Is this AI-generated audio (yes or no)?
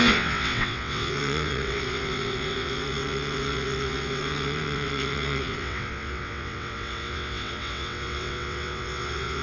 yes